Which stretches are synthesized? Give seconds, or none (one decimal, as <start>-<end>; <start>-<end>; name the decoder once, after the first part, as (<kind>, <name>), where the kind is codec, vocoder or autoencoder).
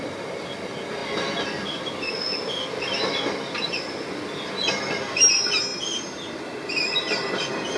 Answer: none